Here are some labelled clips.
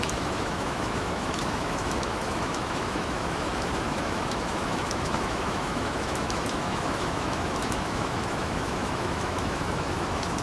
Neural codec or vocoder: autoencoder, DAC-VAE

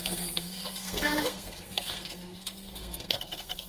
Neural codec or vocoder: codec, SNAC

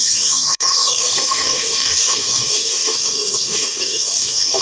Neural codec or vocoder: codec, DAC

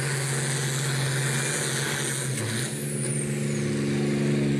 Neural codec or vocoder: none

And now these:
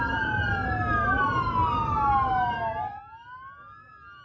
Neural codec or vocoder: none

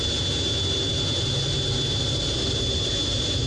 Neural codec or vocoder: none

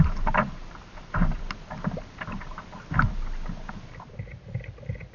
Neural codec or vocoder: none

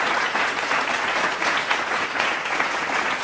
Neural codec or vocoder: vocoder, Vocos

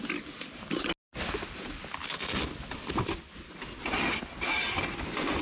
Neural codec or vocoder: none